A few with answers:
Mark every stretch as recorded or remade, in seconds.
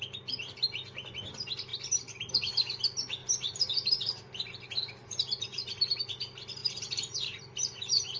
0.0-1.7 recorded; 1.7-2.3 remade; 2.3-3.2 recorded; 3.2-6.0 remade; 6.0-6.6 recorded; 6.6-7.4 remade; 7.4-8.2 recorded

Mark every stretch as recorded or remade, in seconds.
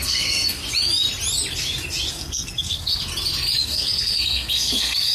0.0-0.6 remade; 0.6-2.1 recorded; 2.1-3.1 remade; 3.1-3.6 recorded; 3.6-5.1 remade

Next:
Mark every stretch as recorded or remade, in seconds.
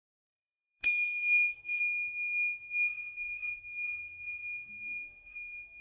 0.0-1.8 remade; 1.8-2.7 recorded; 2.7-5.8 remade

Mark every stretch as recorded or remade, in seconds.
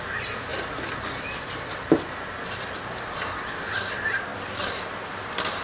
0.0-5.6 recorded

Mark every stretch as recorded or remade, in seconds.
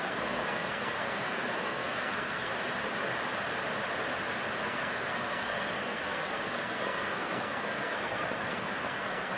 0.0-2.5 remade; 2.5-4.6 recorded; 4.6-9.4 remade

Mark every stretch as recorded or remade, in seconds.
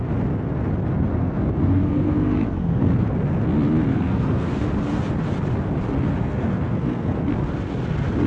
0.0-1.1 recorded; 1.1-3.1 remade; 3.1-3.9 recorded; 3.9-4.6 remade; 4.6-6.2 recorded; 6.2-7.3 remade; 7.3-8.3 recorded